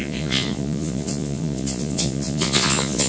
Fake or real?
fake